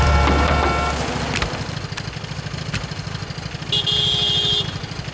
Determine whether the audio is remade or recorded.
recorded